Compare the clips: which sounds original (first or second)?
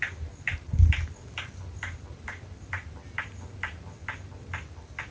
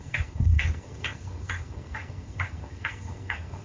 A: first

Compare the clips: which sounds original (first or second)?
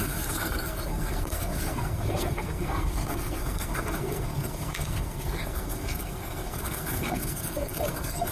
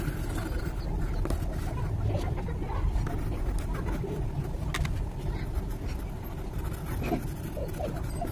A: second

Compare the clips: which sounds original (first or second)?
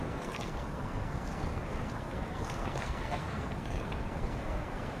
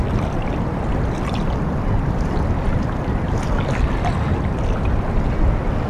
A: second